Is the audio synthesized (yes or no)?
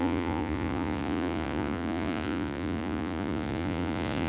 yes